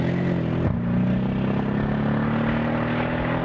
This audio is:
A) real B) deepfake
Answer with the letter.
A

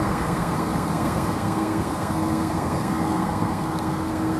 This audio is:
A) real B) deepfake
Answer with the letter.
B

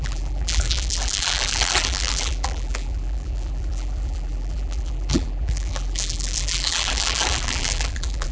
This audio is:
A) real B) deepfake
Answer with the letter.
B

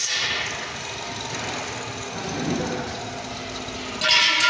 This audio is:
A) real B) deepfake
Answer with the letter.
A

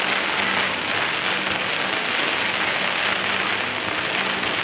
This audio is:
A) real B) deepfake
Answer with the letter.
A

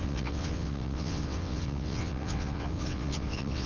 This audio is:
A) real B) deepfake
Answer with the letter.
B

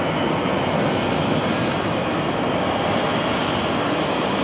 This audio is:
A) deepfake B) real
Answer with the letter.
B